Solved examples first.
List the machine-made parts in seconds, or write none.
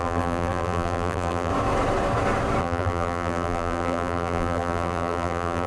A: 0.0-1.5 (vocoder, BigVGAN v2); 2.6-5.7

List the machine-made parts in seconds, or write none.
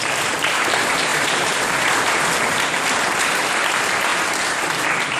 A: 1.1-2.2 (vocoder, BigVGAN v2); 4.1-4.7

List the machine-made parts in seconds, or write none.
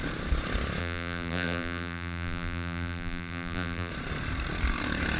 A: 0.8-3.9 (vocoder, BigVGAN v2)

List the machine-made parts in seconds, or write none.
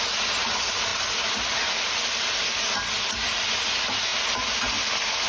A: 0.9-3.4 (vocoder, BigVGAN v2)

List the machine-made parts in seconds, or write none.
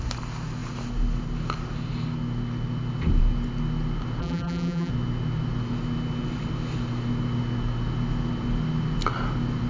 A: 4.2-4.9 (vocoder, BigVGAN v2)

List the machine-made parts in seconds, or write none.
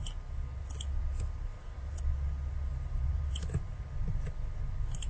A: 1.5-2.0 (vocoder, BigVGAN v2); 2.7-3.3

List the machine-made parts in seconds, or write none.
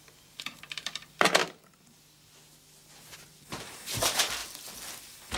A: 0.0-1.4 (vocoder, BigVGAN v2); 3.0-4.4